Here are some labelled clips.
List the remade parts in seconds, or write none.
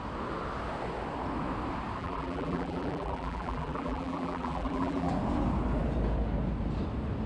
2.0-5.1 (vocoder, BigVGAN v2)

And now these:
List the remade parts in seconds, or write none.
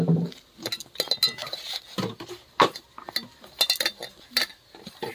1.4-2.3 (vocoder, BigVGAN v2)